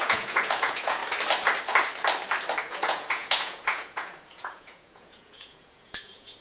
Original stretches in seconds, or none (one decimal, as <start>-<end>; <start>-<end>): 1.0-2.6